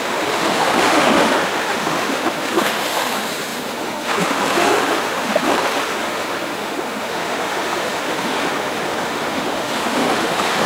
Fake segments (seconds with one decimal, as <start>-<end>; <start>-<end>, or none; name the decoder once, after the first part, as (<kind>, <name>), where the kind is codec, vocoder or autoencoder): 0.0-10.7 (autoencoder, DAC-VAE)